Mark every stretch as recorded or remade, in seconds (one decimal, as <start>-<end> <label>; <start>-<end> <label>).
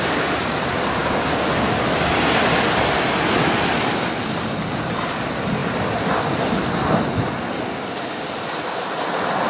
0.0-9.5 recorded